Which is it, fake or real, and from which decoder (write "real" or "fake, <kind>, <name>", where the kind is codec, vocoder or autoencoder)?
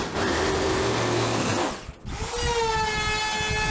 real